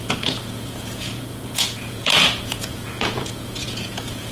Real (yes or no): no